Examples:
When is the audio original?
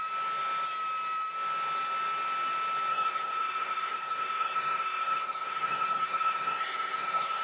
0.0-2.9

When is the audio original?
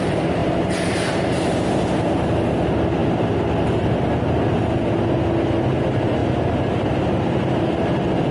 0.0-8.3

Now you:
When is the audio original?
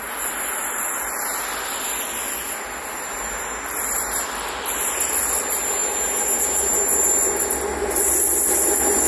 0.0-9.1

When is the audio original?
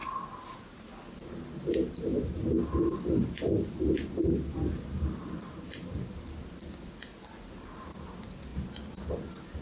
0.0-9.6